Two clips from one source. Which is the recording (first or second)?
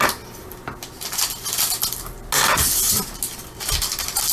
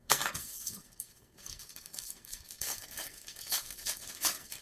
first